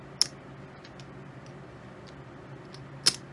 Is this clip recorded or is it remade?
recorded